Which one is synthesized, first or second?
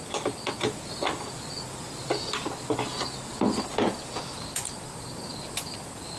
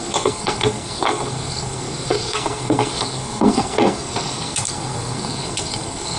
second